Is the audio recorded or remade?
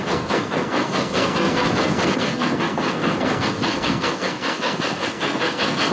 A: remade